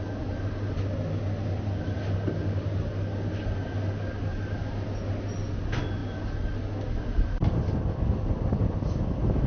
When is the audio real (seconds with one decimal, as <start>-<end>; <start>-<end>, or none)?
0.0-9.5